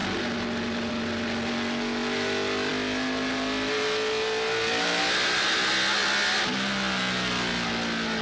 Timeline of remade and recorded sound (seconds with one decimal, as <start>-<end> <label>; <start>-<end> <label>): 0.0-8.2 recorded

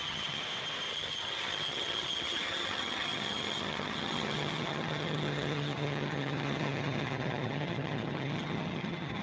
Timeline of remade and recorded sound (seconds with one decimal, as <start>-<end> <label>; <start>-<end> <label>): 0.0-0.4 remade; 0.4-0.9 recorded; 0.9-9.2 remade

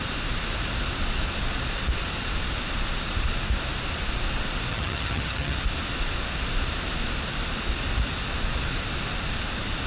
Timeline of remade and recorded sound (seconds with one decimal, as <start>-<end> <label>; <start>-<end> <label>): 0.0-4.7 recorded; 4.7-5.6 remade; 5.6-9.9 recorded

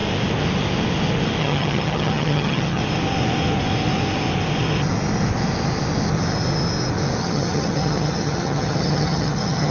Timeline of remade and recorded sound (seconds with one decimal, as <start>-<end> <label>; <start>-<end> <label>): 0.0-1.4 recorded; 1.4-2.8 remade; 2.8-7.2 recorded; 7.2-9.7 remade

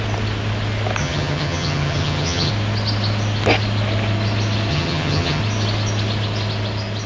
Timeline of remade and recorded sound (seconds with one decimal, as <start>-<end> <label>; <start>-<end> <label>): 0.0-1.0 recorded; 1.0-2.5 remade; 2.5-4.7 recorded; 4.7-5.4 remade; 5.4-7.1 recorded

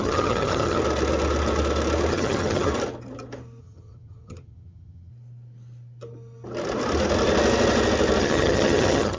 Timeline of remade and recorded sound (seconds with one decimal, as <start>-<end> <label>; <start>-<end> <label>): 0.0-0.8 remade; 0.8-2.1 recorded; 2.1-2.7 remade; 2.7-3.6 recorded; 3.6-5.1 remade; 5.1-8.2 recorded; 8.2-9.2 remade

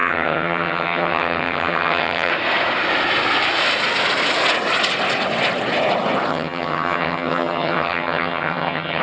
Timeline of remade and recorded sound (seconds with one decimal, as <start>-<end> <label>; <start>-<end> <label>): 0.0-2.3 remade; 2.3-6.3 recorded; 6.3-9.0 remade